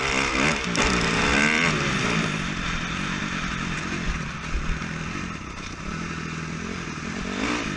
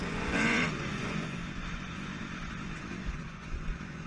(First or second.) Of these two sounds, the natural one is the first